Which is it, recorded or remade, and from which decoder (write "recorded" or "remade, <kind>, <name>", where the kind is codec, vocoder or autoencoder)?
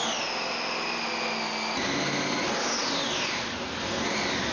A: recorded